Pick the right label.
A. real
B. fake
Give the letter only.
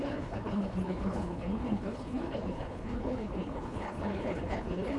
B